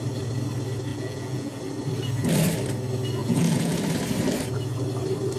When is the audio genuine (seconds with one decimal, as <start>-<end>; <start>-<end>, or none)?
0.0-0.9; 1.6-3.2; 3.8-5.4